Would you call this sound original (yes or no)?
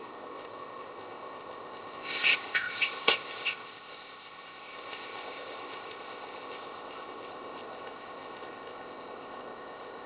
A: no